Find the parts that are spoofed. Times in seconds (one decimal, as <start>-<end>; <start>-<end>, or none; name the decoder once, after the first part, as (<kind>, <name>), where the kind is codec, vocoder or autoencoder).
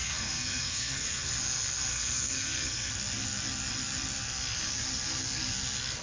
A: 0.0-1.3 (codec, SNAC); 1.9-2.9